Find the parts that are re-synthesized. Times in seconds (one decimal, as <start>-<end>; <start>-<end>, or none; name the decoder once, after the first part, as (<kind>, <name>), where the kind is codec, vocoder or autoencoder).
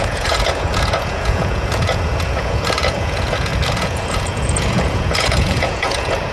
0.0-6.3 (vocoder, Vocos)